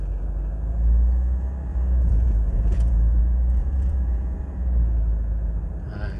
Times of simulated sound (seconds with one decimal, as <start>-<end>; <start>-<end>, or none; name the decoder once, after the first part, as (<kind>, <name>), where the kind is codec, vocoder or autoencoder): 1.7-3.2 (vocoder, Vocos); 3.6-4.4